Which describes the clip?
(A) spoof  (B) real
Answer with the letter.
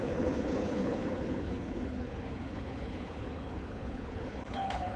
A